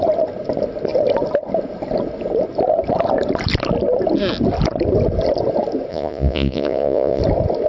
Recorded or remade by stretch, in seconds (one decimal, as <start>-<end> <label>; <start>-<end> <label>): 0.0-5.9 recorded; 5.9-7.2 remade; 7.2-7.7 recorded